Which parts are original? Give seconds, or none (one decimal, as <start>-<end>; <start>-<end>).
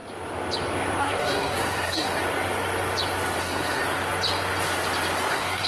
0.0-1.0; 2.2-3.4; 3.8-5.3